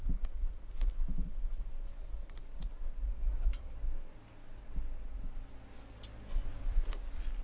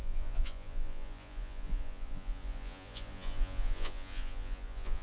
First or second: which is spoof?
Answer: second